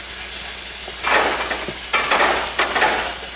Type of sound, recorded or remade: recorded